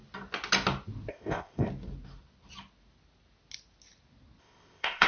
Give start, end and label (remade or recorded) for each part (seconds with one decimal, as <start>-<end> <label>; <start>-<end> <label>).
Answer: 0.0-1.1 recorded; 1.1-1.7 remade; 1.7-4.4 recorded; 4.4-5.1 remade